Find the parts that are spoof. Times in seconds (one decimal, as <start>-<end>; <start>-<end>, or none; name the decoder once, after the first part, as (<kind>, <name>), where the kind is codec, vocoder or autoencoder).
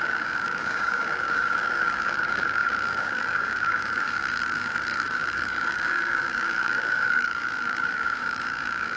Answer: 0.0-9.0 (codec, DAC)